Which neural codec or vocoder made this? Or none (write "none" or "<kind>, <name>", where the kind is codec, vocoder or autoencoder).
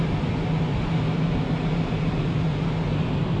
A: none